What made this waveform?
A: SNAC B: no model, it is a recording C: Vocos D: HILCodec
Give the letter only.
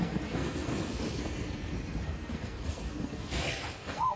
A